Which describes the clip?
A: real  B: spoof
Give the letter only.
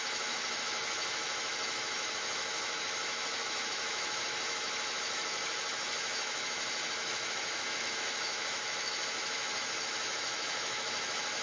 B